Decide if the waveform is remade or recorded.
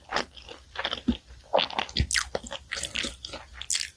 recorded